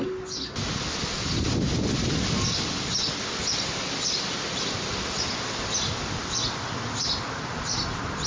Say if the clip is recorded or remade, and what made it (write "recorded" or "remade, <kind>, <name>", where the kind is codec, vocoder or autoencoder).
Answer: recorded